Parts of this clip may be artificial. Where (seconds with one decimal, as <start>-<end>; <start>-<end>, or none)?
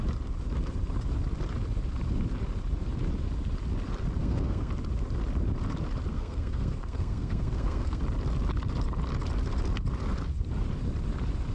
4.2-4.7; 6.1-8.0